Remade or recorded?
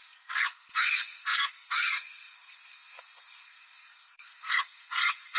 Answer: remade